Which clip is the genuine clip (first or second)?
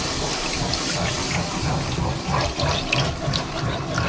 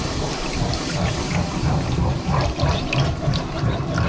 first